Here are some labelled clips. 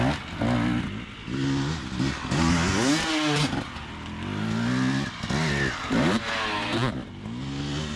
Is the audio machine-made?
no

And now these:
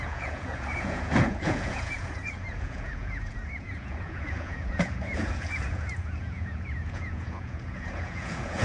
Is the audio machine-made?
yes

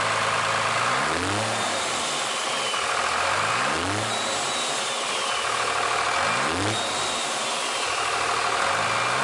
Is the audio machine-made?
no